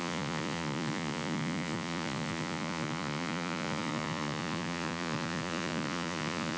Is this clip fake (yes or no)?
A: yes